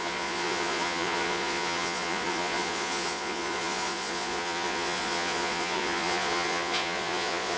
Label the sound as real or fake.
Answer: fake